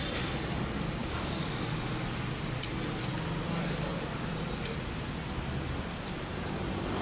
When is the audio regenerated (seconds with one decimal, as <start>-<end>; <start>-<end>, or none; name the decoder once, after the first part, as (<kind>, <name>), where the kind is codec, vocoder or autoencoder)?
1.0-1.8 (codec, DAC)